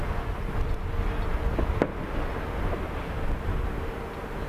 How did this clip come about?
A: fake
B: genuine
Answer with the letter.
B